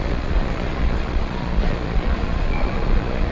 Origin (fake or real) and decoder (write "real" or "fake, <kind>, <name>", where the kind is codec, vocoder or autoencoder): fake, vocoder, Vocos